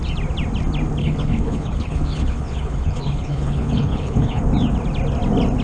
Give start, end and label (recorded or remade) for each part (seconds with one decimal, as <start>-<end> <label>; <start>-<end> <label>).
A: 0.0-1.0 recorded; 1.0-4.4 remade; 4.4-5.6 recorded